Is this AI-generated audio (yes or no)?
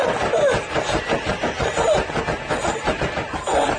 no